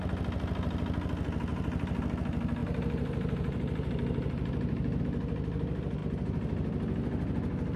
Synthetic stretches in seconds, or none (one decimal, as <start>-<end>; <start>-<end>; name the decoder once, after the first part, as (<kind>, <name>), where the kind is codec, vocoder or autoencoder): 1.5-2.0 (vocoder, BigVGAN v2); 2.6-5.0